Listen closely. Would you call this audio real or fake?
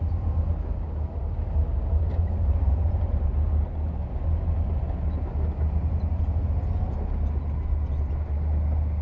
real